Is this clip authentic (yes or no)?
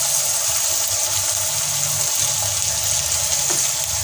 yes